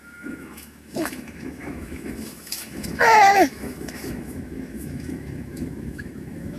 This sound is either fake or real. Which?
fake